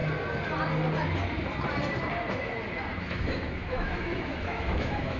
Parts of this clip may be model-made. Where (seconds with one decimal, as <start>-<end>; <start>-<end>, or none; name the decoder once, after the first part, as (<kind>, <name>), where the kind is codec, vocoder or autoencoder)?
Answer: 3.0-5.2 (autoencoder, DAC-VAE)